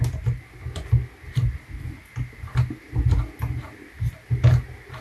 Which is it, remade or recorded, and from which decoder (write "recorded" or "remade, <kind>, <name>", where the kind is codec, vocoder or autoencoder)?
recorded